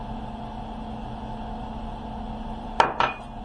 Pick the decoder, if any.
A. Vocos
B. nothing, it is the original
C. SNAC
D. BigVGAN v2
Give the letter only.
B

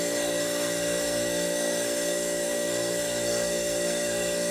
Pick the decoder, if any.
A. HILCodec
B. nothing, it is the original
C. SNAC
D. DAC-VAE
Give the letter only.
C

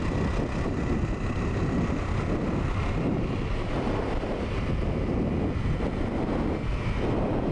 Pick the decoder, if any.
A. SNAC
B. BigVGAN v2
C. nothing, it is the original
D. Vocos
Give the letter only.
C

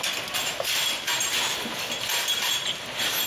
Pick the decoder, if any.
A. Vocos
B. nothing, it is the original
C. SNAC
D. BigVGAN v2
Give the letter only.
B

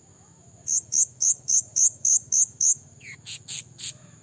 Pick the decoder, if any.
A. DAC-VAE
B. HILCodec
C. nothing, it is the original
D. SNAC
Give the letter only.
A